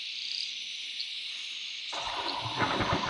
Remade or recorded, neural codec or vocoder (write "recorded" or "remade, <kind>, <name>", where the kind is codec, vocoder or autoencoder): recorded